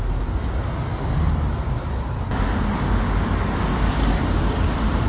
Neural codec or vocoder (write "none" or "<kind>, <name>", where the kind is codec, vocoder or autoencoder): none